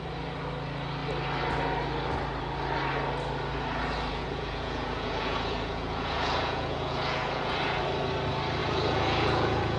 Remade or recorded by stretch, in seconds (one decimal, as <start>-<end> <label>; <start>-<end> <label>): 0.0-4.1 recorded; 4.1-7.8 remade; 7.8-8.6 recorded; 8.6-9.8 remade